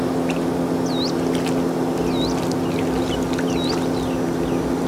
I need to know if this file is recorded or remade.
recorded